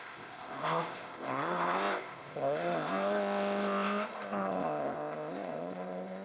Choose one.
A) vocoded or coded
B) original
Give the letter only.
A